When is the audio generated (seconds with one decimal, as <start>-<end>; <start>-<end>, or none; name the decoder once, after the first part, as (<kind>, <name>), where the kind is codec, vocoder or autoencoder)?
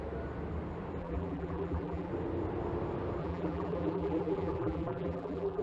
1.0-2.1 (vocoder, BigVGAN v2); 3.2-5.6